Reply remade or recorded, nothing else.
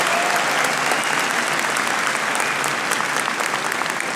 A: recorded